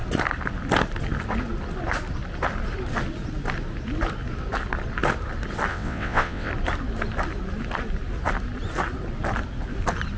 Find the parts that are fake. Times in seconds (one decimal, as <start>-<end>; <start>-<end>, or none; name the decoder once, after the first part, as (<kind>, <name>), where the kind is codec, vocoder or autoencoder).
5.7-6.5 (vocoder, WaveNeXt)